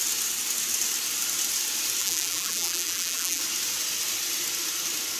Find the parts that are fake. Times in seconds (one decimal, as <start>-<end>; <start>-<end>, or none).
2.0-3.4